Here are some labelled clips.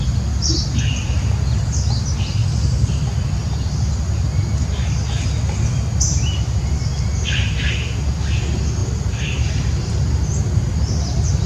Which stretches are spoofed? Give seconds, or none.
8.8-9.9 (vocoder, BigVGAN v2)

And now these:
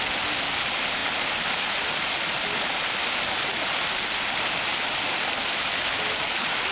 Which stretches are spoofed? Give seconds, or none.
none

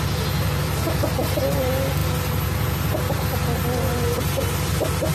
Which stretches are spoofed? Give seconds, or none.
none

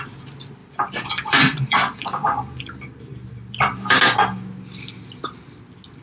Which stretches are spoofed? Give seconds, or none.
0.6-4.0 (vocoder, BigVGAN v2)